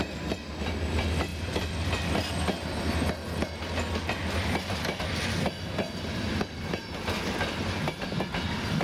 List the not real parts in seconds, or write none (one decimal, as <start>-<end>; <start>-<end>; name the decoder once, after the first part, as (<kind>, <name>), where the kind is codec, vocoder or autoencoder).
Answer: 1.3-5.0 (vocoder, BigVGAN v2)